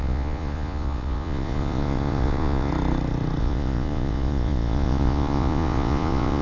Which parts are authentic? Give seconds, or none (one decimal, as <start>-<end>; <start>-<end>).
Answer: 2.7-3.4